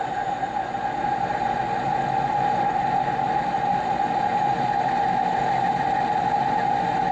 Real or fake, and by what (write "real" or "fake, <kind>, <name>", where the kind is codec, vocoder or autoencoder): real